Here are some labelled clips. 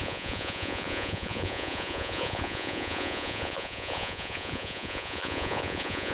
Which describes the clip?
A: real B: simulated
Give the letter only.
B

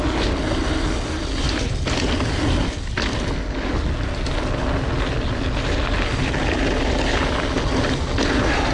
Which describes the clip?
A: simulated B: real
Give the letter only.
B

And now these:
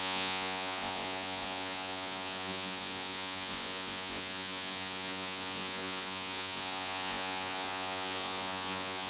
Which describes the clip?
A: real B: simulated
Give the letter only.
B